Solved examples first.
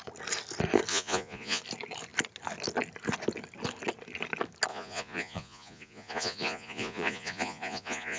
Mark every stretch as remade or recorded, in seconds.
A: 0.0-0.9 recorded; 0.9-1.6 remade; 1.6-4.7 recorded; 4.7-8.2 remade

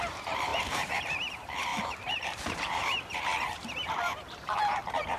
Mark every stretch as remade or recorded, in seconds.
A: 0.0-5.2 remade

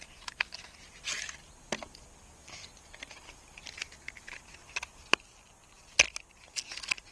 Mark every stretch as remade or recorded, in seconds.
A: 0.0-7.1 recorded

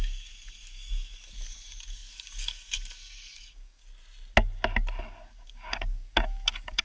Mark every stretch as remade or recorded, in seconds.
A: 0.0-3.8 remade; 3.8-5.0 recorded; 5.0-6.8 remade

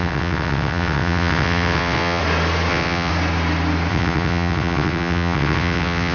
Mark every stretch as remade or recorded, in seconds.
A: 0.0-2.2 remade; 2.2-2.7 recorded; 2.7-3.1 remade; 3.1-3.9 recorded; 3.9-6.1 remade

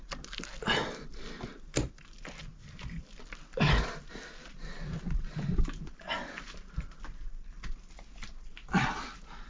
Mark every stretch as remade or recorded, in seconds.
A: 0.0-9.5 recorded